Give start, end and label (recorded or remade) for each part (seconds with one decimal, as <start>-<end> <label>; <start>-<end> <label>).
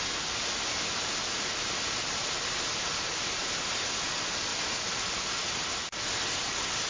0.0-6.9 recorded